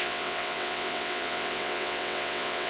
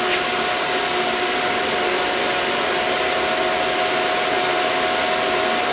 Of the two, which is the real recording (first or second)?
second